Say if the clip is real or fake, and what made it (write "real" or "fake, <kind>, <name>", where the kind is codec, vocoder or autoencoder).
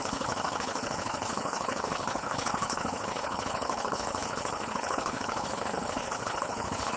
fake, codec, HILCodec